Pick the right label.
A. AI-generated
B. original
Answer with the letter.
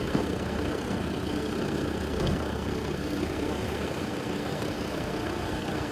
A